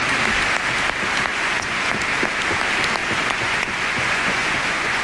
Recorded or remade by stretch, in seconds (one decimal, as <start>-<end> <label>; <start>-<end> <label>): 0.0-1.3 recorded; 1.3-2.0 remade; 2.0-3.0 recorded; 3.0-5.0 remade